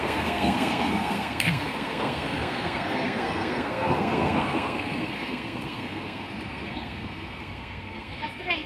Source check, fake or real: fake